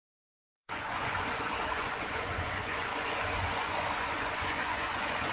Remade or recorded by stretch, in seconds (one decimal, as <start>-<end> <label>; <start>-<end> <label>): 0.0-5.3 remade